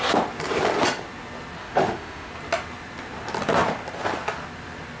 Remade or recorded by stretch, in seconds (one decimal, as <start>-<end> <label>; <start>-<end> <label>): 0.0-1.6 recorded; 1.6-2.3 remade; 2.3-5.0 recorded